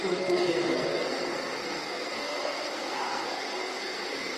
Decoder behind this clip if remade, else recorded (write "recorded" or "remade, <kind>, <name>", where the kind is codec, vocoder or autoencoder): remade, codec, SNAC